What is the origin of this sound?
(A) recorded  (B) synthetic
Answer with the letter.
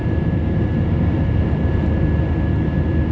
A